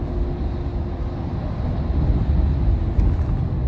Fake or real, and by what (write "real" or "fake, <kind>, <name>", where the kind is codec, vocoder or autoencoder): real